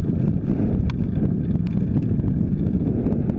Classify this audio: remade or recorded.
recorded